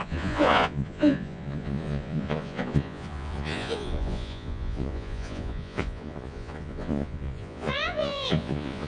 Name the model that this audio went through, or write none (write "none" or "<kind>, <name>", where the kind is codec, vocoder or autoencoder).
vocoder, Vocos